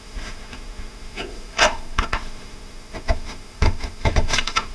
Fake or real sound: fake